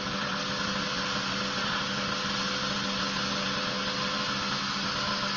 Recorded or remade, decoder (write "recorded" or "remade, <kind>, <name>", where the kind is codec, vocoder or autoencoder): recorded